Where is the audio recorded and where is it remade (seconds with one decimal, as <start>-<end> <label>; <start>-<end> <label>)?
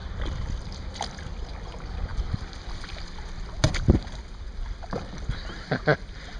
0.0-6.4 recorded